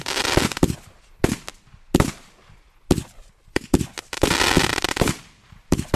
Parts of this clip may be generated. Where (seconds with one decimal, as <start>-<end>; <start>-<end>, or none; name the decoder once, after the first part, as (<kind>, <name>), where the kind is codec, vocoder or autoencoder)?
4.7-6.0 (vocoder, BigVGAN v2)